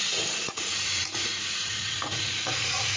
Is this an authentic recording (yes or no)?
no